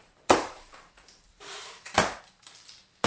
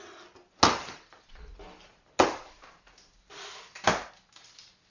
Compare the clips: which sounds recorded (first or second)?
second